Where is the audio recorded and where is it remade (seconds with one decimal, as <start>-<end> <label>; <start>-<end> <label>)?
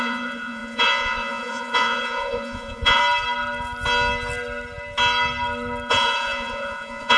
0.0-3.0 remade; 3.0-5.9 recorded; 5.9-7.2 remade